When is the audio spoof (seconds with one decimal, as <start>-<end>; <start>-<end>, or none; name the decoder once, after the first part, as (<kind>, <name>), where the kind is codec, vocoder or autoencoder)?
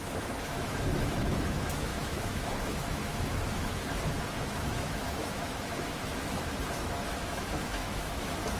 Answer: 0.0-8.6 (autoencoder, DAC-VAE)